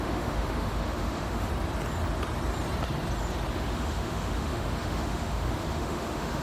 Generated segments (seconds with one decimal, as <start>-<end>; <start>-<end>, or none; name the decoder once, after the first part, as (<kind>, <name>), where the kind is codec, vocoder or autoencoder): 0.0-1.5 (autoencoder, DAC-VAE); 3.5-6.4